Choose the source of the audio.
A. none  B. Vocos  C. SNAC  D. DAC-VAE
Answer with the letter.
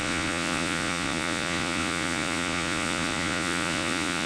B